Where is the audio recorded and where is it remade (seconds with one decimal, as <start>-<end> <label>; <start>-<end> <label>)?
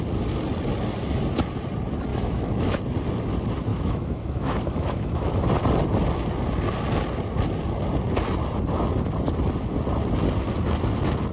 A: 0.0-2.1 recorded; 2.1-2.8 remade; 2.8-3.7 recorded; 3.7-5.4 remade; 5.4-11.3 recorded